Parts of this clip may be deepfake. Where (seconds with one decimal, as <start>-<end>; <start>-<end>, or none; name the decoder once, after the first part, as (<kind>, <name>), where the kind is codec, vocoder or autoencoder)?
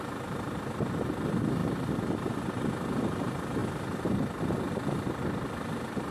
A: 0.0-3.6 (vocoder, BigVGAN v2); 4.4-6.1